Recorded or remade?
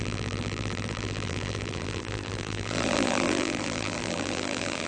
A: remade